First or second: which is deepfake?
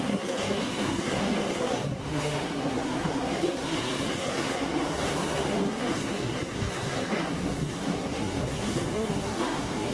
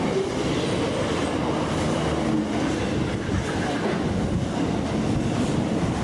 first